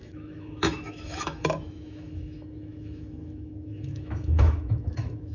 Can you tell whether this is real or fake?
fake